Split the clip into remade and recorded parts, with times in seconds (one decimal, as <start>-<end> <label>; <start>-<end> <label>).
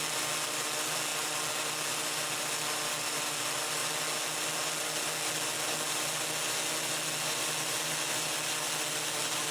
0.0-9.5 recorded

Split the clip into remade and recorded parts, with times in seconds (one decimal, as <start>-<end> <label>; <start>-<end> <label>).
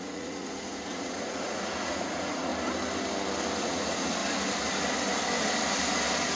0.0-2.5 remade; 2.5-3.6 recorded; 3.6-4.2 remade; 4.2-6.4 recorded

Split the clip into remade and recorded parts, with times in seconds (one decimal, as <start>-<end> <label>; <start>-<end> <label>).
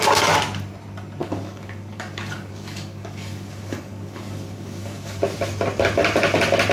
0.0-1.2 recorded; 1.2-5.2 remade; 5.2-6.7 recorded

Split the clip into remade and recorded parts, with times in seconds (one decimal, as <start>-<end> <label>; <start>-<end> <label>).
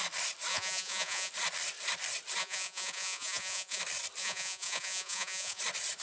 0.0-0.5 recorded; 0.5-1.3 remade; 1.3-2.4 recorded; 2.4-3.8 remade; 3.8-4.2 recorded; 4.2-5.6 remade; 5.6-6.0 recorded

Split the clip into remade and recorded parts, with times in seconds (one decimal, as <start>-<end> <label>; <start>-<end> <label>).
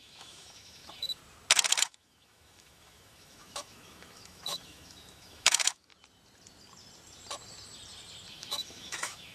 0.0-1.2 remade; 1.2-1.8 recorded; 1.8-5.9 remade; 5.9-8.3 recorded; 8.3-9.3 remade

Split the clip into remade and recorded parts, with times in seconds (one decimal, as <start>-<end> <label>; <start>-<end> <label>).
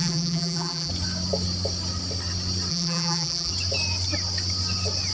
0.0-0.9 remade; 0.9-2.7 recorded; 2.7-3.5 remade; 3.5-5.1 recorded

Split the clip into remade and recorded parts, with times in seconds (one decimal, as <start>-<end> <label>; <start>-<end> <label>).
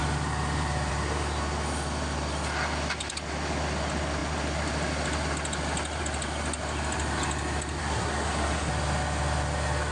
0.0-7.8 recorded; 7.8-8.7 remade; 8.7-9.9 recorded